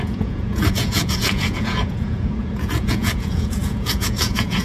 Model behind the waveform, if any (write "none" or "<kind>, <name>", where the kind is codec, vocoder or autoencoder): vocoder, Vocos